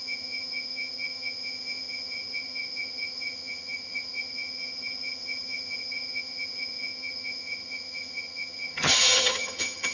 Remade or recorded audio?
remade